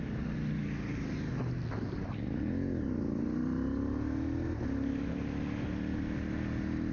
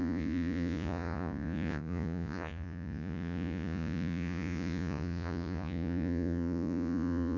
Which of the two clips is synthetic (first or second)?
second